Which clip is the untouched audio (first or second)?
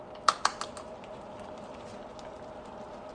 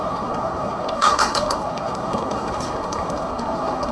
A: first